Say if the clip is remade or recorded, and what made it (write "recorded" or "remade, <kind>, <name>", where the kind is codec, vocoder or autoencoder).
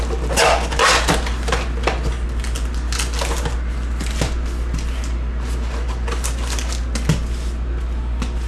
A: recorded